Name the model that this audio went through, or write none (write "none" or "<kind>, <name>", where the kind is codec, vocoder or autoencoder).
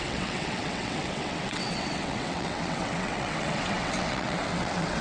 vocoder, WaveNeXt